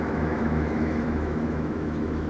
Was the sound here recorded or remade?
remade